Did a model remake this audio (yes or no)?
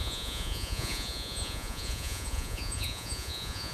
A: yes